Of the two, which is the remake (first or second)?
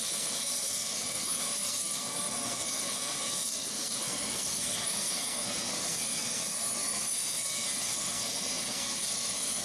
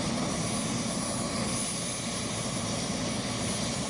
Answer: first